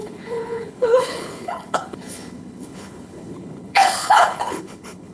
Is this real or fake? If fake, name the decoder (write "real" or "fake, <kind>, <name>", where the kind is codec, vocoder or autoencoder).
fake, codec, HILCodec